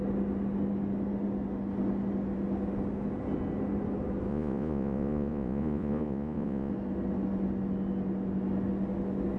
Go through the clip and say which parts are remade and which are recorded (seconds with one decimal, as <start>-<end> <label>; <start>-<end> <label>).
0.0-4.3 recorded; 4.3-6.7 remade; 6.7-9.4 recorded